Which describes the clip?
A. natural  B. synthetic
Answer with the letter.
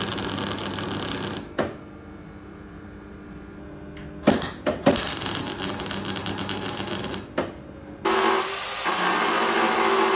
A